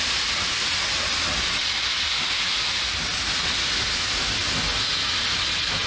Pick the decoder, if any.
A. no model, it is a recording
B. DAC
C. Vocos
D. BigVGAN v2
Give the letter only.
A